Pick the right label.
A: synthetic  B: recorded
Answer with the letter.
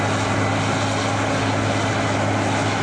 B